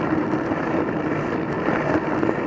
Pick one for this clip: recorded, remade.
recorded